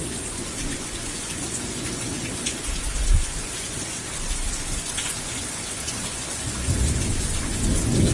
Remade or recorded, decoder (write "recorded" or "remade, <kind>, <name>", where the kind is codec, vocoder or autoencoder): remade, vocoder, Vocos